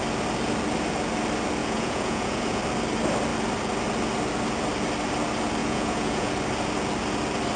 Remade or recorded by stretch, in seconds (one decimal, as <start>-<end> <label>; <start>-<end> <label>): 0.0-1.6 recorded; 1.6-2.6 remade; 2.6-5.6 recorded; 5.6-6.3 remade; 6.3-7.6 recorded